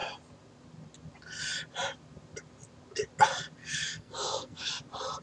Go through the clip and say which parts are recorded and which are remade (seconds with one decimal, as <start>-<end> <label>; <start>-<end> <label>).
0.0-3.6 recorded; 3.6-4.7 remade; 4.7-5.2 recorded